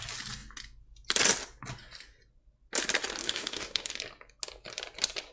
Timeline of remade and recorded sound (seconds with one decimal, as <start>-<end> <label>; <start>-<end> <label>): 0.0-3.2 recorded; 3.2-3.9 remade; 3.9-5.3 recorded